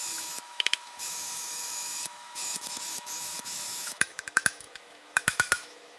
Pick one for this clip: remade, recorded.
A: remade